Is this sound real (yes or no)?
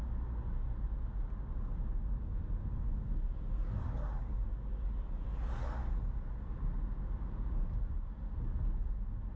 yes